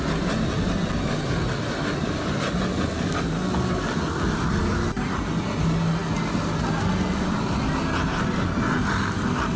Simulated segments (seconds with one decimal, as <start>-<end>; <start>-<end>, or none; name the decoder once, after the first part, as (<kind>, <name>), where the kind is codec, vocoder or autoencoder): none